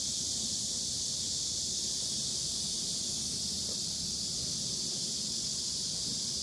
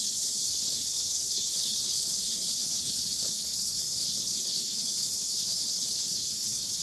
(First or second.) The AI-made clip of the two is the second